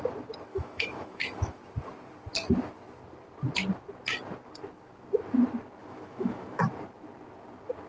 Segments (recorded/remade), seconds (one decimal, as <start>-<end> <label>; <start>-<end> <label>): 0.0-0.5 recorded; 0.5-1.6 remade; 1.6-5.8 recorded; 5.8-6.6 remade; 6.6-7.9 recorded